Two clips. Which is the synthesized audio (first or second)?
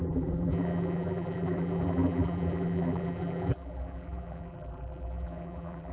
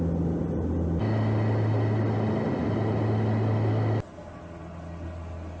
first